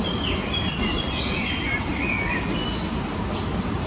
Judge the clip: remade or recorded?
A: recorded